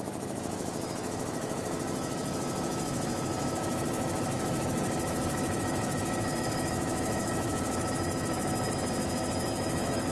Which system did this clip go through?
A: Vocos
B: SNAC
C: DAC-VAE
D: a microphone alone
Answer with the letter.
C